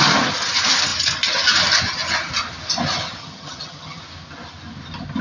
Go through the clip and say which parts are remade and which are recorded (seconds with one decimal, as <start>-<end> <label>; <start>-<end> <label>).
0.0-3.2 recorded; 3.2-4.0 remade; 4.0-5.2 recorded